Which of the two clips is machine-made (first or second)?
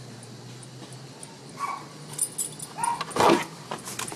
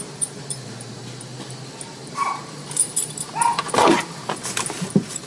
second